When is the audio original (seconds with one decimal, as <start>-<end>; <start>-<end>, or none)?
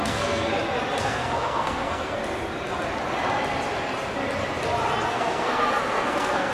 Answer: 0.5-1.0; 2.2-5.1